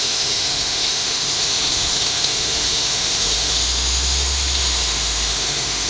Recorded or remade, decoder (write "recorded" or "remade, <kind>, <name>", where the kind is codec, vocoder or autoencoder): remade, autoencoder, DAC-VAE